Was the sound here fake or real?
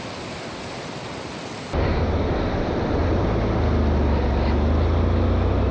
real